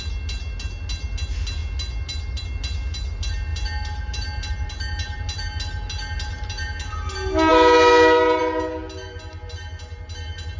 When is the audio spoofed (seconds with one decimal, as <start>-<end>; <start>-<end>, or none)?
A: none